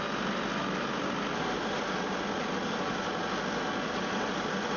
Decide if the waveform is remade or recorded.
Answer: recorded